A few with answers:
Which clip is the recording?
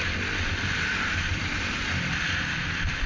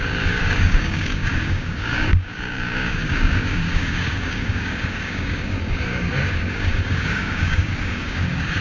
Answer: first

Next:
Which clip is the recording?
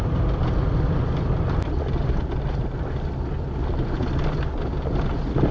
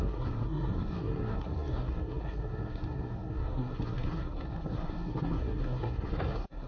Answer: first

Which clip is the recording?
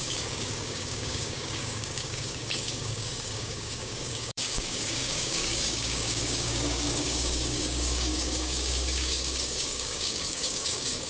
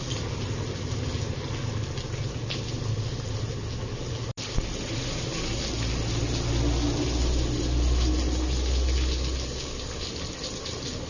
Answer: second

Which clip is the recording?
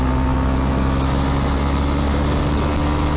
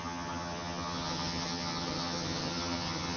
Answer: first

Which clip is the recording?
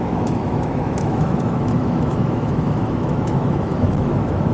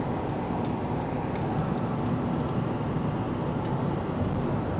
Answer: second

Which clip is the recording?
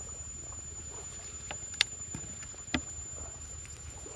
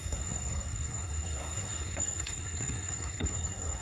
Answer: first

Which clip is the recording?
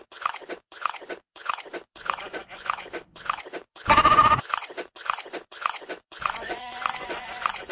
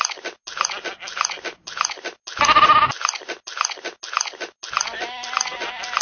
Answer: second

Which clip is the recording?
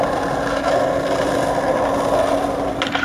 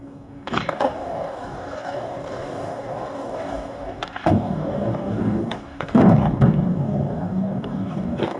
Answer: first